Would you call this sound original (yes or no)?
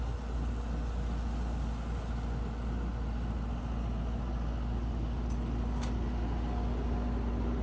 yes